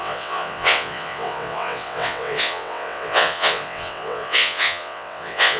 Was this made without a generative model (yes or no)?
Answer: no